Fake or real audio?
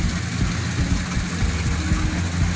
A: real